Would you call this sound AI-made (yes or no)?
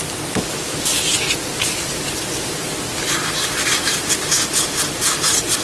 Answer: no